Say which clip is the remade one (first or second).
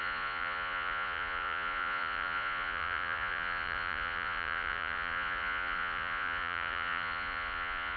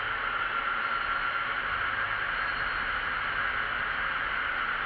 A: first